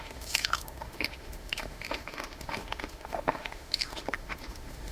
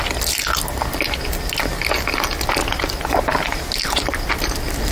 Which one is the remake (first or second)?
first